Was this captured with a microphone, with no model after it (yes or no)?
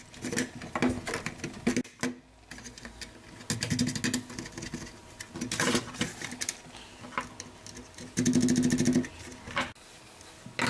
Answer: yes